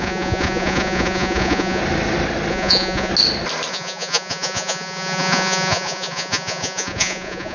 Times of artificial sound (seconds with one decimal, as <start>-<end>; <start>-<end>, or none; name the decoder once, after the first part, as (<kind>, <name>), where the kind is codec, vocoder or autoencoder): 0.0-1.8 (vocoder, Vocos); 2.5-3.1; 3.7-7.5